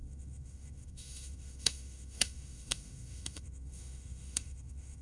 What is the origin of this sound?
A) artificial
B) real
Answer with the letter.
A